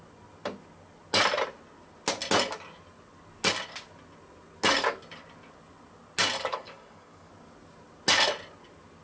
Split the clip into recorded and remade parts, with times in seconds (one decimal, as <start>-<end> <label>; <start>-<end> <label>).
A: 0.0-6.5 recorded; 6.5-7.3 remade; 7.3-9.0 recorded